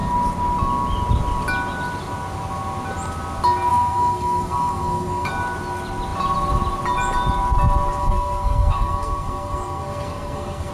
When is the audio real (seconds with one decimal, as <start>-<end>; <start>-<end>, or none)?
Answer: 0.0-3.7; 5.3-8.0